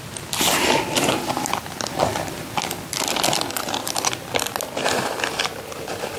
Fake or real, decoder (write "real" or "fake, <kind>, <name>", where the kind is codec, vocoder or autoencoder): real